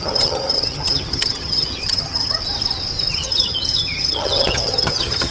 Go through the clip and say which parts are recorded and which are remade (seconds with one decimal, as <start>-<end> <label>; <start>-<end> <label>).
0.0-2.4 remade; 2.4-3.1 recorded; 3.1-5.3 remade